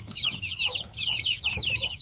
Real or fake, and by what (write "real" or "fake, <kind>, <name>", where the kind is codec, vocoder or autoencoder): fake, autoencoder, DAC-VAE